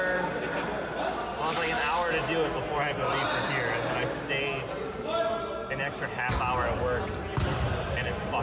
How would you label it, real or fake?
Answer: real